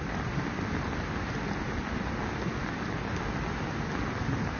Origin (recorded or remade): recorded